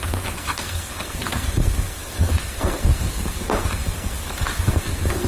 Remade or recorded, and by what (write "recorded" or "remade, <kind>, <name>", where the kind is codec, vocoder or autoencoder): remade, codec, SNAC